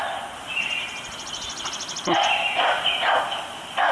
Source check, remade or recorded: recorded